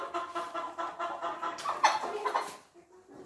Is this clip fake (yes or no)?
no